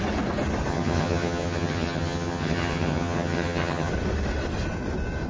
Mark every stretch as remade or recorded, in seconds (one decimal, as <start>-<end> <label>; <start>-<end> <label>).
0.0-0.7 recorded; 0.7-3.9 remade; 3.9-5.3 recorded